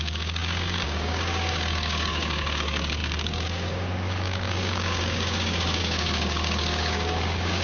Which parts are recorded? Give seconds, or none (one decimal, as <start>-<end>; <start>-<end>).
none

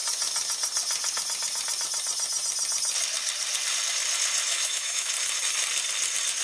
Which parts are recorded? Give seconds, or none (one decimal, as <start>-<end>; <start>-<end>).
0.0-4.5; 5.1-6.4

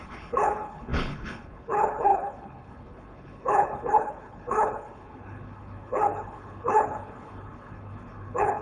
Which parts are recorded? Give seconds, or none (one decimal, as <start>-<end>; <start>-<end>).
none